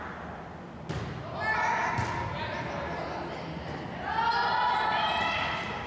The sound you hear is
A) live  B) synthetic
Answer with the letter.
A